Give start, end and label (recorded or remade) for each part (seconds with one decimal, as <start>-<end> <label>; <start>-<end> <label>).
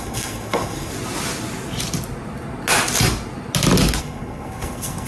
0.0-0.9 remade; 0.9-4.0 recorded; 4.0-5.1 remade